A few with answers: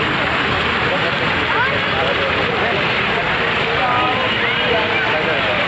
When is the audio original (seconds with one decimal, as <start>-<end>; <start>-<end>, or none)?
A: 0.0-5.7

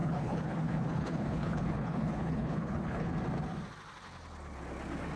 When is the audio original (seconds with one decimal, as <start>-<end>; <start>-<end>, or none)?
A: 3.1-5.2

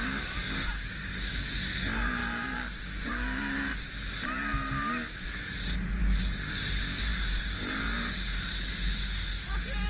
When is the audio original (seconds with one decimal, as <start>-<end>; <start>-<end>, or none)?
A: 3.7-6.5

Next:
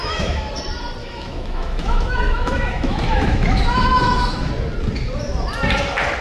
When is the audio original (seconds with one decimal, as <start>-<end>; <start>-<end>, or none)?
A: 0.5-1.0; 4.5-6.2